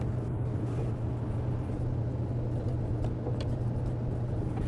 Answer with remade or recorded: recorded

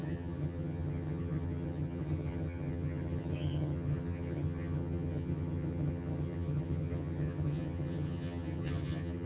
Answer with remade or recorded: remade